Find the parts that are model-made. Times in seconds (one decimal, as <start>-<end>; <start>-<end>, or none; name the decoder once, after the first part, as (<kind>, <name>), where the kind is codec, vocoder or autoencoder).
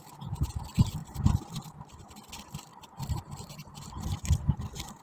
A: 0.0-1.0 (vocoder, BigVGAN v2); 2.3-5.0